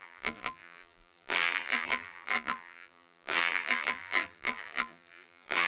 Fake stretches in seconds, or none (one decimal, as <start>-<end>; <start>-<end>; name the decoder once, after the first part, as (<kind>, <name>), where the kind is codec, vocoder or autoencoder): 0.0-5.7 (vocoder, BigVGAN v2)